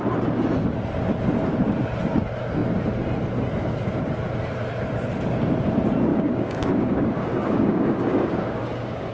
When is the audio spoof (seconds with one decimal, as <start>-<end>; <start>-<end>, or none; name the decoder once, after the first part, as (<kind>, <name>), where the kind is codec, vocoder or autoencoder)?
6.1-9.1 (codec, DAC)